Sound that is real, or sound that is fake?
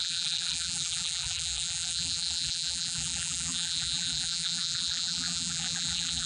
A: fake